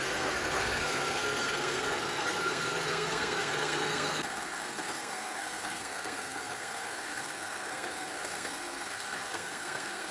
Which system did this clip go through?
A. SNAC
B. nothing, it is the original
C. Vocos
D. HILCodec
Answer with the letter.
A